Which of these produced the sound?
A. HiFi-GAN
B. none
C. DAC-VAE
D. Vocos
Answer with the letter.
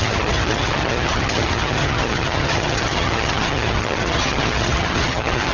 A